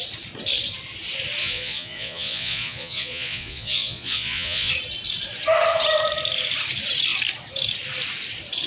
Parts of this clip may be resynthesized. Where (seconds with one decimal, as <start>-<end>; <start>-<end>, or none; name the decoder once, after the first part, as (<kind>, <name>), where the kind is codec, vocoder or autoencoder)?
1.4-4.7 (vocoder, Vocos)